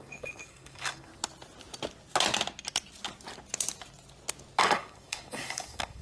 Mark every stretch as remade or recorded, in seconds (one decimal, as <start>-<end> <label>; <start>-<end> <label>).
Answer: 0.0-1.1 remade; 1.1-4.6 recorded; 4.6-6.0 remade